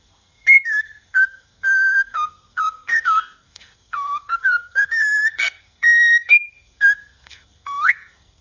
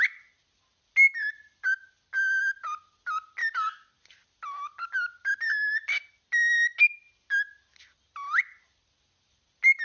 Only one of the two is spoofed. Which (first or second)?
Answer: first